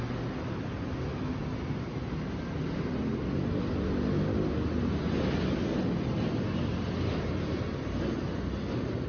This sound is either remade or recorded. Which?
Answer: recorded